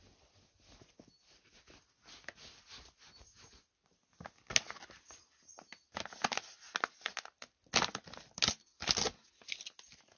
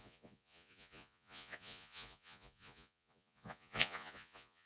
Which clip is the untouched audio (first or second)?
first